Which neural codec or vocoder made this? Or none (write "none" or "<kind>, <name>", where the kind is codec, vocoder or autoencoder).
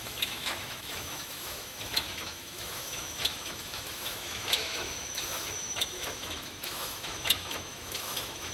autoencoder, DAC-VAE